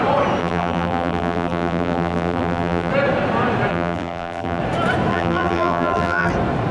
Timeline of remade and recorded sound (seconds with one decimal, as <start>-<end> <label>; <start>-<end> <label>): 0.0-0.4 recorded; 0.4-2.9 remade; 2.9-3.7 recorded; 3.7-4.6 remade; 4.6-5.1 recorded; 5.1-6.3 remade; 6.3-6.7 recorded